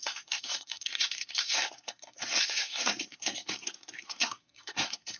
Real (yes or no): no